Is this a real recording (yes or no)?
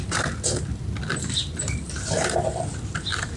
yes